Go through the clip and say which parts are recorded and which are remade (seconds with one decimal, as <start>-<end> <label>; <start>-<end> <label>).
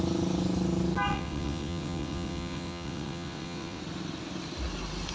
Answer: 0.0-1.1 recorded; 1.1-3.8 remade; 3.8-5.1 recorded